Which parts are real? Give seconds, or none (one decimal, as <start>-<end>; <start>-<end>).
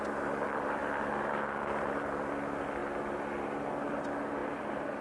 0.0-5.0